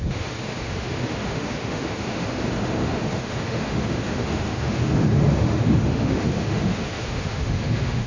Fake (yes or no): yes